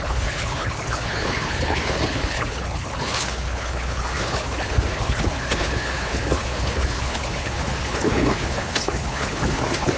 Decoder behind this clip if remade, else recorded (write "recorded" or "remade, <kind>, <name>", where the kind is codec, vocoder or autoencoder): remade, codec, HILCodec